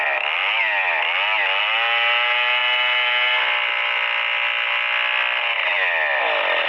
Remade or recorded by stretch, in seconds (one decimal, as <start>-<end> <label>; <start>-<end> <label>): 0.0-6.7 recorded

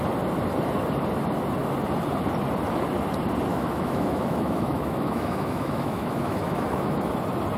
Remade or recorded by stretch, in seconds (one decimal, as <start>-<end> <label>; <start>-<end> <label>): 0.0-3.5 recorded; 3.5-7.1 remade; 7.1-7.6 recorded

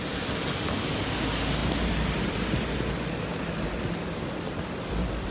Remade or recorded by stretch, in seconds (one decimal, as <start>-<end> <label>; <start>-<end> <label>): 0.0-5.3 recorded

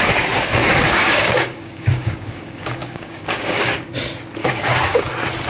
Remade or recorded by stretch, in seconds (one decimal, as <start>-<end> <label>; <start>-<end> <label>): 0.0-0.6 recorded; 0.6-3.9 remade; 3.9-4.4 recorded; 4.4-5.1 remade; 5.1-5.5 recorded

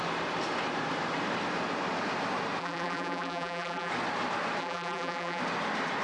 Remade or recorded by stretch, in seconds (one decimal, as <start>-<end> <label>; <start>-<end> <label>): 0.0-2.6 recorded; 2.6-3.9 remade; 3.9-4.6 recorded; 4.6-5.4 remade; 5.4-6.0 recorded

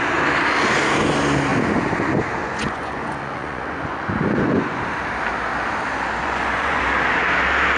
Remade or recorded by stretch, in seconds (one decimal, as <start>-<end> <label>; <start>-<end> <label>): 0.0-2.4 recorded; 2.4-4.8 remade; 4.8-6.2 recorded; 6.2-6.8 remade; 6.8-7.8 recorded